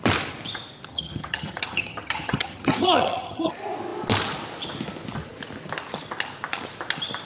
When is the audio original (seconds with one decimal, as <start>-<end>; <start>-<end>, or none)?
0.0-0.9; 3.5-7.3